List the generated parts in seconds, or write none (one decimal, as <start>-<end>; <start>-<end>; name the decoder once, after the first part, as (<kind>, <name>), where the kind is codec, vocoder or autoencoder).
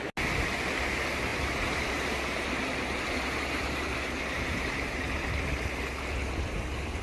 1.3-5.5 (vocoder, BigVGAN v2)